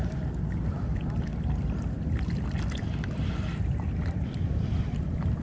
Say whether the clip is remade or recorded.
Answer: remade